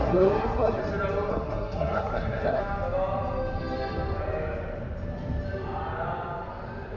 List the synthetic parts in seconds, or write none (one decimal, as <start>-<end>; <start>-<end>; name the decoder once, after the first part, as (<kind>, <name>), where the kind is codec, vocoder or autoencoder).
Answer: 0.0-0.8 (codec, SNAC); 1.3-2.6